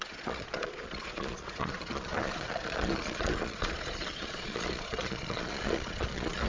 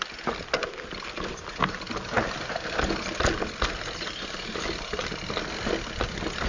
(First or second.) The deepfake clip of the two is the first